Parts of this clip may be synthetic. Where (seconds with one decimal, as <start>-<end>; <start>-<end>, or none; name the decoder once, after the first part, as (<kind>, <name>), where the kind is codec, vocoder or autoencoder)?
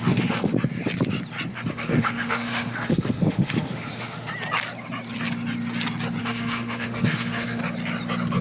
0.0-0.5 (autoencoder, DAC-VAE); 1.7-4.3; 6.2-7.6